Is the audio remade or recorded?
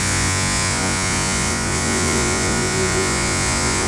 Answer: remade